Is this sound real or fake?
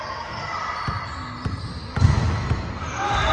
real